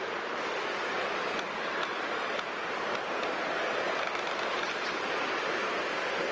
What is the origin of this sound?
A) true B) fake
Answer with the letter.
A